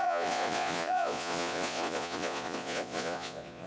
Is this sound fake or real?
fake